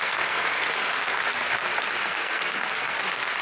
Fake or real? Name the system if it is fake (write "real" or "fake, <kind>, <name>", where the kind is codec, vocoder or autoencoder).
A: fake, codec, SNAC